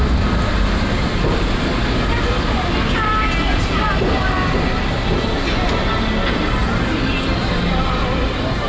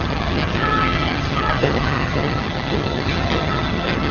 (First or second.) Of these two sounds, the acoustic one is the first